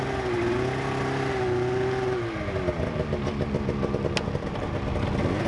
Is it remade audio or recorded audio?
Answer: recorded